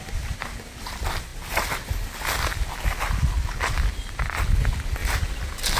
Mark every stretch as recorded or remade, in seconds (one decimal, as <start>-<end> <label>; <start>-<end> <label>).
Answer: 0.0-5.8 recorded